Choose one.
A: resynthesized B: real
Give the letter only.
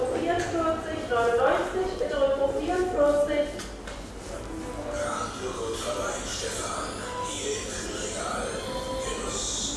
B